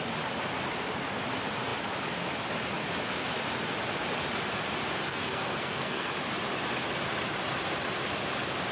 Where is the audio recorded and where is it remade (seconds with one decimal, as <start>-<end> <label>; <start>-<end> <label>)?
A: 0.0-5.1 recorded; 5.1-6.1 remade; 6.1-8.7 recorded